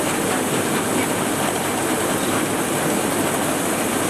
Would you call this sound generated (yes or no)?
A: no